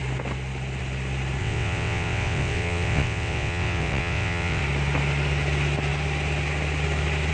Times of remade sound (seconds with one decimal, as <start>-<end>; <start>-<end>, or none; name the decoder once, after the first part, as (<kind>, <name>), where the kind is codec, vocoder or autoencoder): 1.4-4.6 (vocoder, WaveNeXt)

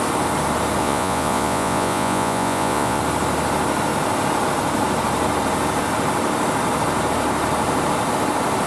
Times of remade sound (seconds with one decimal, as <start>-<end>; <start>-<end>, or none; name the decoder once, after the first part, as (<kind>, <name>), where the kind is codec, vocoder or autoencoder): 0.8-3.0 (vocoder, Vocos)

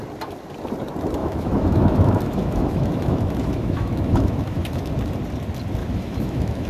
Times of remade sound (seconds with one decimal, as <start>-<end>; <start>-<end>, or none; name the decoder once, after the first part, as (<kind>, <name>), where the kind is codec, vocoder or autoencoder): 1.2-4.9 (autoencoder, DAC-VAE); 5.8-6.7

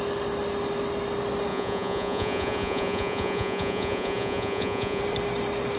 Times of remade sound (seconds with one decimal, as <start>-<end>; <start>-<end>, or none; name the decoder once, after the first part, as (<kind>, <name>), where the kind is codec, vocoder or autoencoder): 1.5-5.0 (vocoder, Vocos)

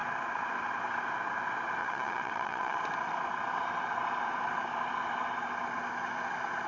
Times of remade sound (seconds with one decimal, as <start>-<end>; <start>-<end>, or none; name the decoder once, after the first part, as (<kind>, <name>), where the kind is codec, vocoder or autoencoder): 1.8-2.8 (vocoder, WaveNeXt)

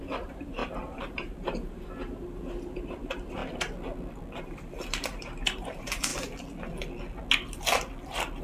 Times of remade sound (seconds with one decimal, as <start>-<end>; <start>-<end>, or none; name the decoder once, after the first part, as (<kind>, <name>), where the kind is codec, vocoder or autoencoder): 0.0-3.4 (vocoder, BigVGAN v2); 4.4-6.1

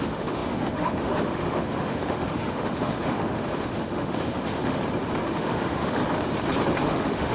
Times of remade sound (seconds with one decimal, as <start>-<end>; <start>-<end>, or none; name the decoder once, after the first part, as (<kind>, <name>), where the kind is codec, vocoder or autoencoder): 0.0-4.8 (autoencoder, DAC-VAE); 5.3-6.0; 6.8-7.3